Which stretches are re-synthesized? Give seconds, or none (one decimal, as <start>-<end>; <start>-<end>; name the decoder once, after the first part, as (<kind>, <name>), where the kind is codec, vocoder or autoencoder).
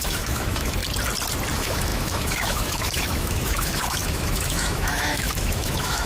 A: 0.0-0.8 (autoencoder, DAC-VAE); 1.5-6.1